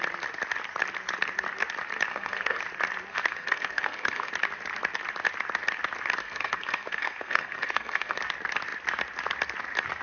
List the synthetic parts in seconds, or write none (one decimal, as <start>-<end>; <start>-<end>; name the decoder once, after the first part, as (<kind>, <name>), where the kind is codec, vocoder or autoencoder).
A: 2.1-2.6 (codec, SNAC); 3.1-4.3; 6.2-8.2